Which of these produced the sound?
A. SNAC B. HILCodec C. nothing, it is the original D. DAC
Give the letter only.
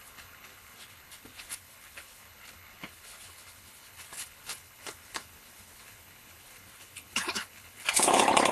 B